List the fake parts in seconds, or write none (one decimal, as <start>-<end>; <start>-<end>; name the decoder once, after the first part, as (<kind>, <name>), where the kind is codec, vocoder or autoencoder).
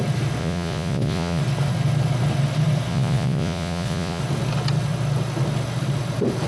0.4-1.4 (vocoder, Vocos); 2.9-4.2